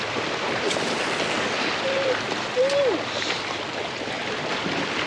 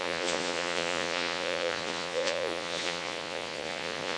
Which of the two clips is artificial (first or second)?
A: second